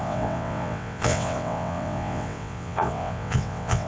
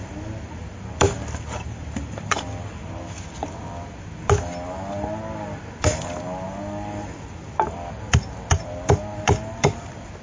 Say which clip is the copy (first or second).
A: first